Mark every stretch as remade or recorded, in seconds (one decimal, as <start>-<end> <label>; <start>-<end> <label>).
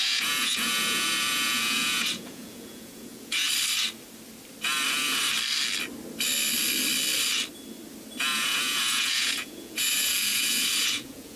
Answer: 0.0-3.5 remade; 3.5-8.3 recorded; 8.3-11.4 remade